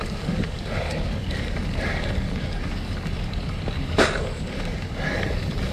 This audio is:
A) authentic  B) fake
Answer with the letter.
B